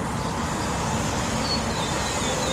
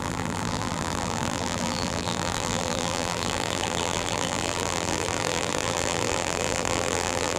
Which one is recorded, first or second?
first